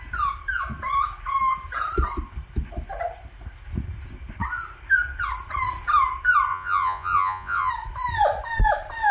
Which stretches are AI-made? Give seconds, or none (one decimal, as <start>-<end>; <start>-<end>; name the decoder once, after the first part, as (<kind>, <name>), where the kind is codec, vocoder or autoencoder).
6.5-7.7 (vocoder, Vocos)

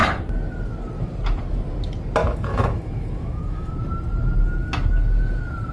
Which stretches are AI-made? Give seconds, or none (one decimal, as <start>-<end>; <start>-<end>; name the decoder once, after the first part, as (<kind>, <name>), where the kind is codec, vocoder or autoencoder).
2.2-3.7 (autoencoder, DAC-VAE)